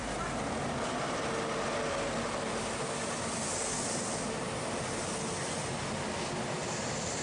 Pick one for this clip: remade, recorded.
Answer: recorded